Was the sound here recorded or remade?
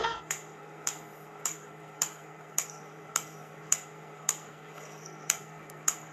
remade